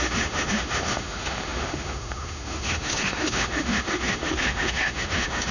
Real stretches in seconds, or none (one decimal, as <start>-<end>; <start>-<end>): none